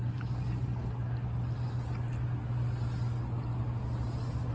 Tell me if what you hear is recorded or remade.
recorded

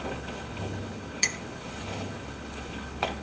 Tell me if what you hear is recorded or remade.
remade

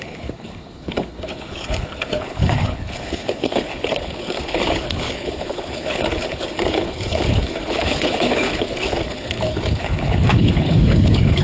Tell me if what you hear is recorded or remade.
remade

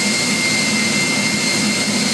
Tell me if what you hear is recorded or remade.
recorded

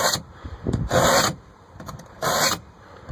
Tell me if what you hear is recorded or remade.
remade